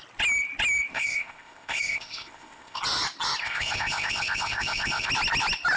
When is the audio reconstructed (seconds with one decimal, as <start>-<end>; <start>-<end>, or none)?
0.9-2.8; 3.4-5.1